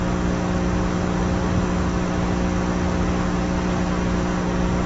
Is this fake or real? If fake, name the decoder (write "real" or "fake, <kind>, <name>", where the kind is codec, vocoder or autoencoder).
real